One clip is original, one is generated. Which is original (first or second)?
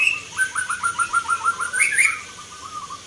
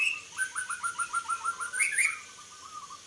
second